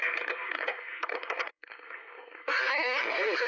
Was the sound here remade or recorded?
remade